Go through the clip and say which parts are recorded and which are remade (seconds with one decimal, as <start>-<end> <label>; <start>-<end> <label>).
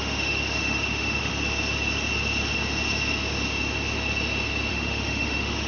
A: 0.0-1.3 remade; 1.3-4.7 recorded; 4.7-5.7 remade